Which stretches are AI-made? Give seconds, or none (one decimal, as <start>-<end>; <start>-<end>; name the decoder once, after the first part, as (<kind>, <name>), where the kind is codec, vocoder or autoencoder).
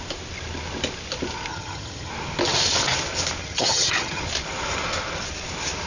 1.5-2.1 (vocoder, HiFi-GAN); 3.4-4.2